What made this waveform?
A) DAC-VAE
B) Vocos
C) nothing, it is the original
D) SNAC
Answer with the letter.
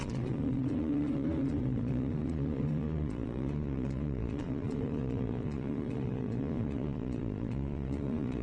B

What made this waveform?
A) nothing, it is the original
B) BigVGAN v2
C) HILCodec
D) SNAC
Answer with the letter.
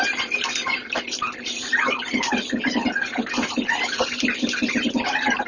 B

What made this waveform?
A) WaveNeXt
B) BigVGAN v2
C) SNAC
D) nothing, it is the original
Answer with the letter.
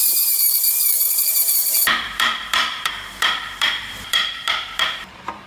B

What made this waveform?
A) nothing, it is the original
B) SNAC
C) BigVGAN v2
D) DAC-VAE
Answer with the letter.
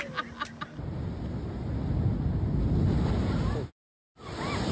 A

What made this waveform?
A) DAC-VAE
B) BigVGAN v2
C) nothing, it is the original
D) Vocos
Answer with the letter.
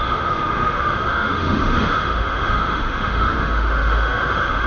A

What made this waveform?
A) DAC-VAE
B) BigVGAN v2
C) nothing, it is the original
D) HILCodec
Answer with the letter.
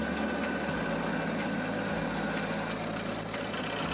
C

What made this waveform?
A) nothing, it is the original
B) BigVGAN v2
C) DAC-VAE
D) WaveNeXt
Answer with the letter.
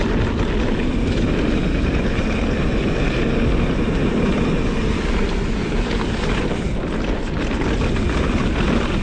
A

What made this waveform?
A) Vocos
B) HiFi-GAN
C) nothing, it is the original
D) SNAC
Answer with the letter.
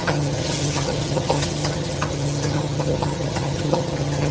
B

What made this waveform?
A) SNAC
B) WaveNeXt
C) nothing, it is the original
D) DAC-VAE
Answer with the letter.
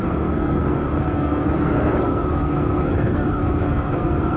A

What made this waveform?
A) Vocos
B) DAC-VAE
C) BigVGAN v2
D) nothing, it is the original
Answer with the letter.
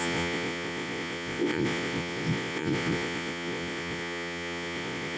A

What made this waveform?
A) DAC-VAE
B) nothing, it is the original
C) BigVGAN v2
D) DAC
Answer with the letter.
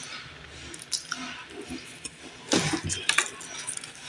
B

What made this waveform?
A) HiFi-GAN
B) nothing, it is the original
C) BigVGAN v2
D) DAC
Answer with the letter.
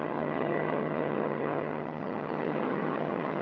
A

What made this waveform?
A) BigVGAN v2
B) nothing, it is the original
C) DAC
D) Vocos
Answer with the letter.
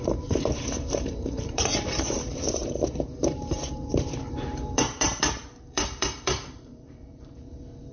A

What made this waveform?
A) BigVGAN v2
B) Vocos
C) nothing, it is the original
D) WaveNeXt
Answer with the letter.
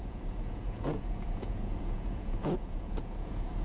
B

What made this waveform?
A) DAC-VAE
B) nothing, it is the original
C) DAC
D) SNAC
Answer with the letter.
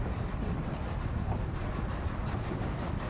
B